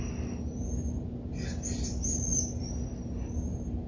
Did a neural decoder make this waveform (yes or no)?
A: no